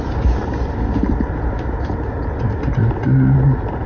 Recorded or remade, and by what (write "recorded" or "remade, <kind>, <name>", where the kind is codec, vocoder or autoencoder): recorded